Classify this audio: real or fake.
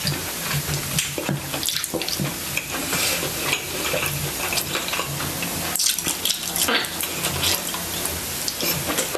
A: real